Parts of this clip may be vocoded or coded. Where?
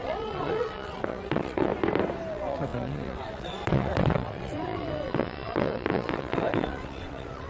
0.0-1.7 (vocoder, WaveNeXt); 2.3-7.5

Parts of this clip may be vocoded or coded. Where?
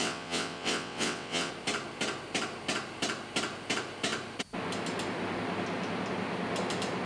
0.0-1.5 (vocoder, WaveNeXt)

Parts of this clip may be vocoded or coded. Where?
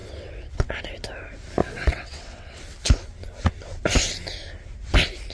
0.0-0.8 (vocoder, WaveNeXt); 1.6-2.7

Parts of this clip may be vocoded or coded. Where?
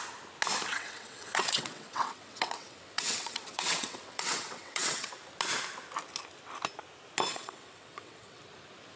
0.7-5.1 (vocoder, WaveNeXt); 7.3-8.4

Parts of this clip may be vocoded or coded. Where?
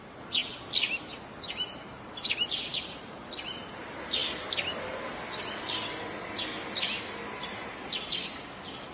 none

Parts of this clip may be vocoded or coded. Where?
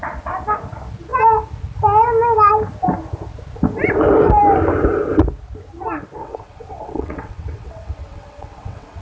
6.2-9.0 (vocoder, WaveNeXt)